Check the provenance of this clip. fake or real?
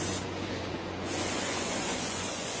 fake